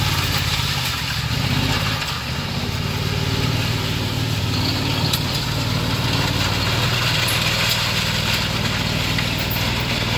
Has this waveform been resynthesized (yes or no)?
no